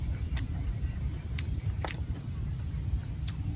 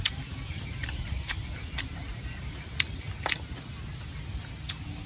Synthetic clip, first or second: first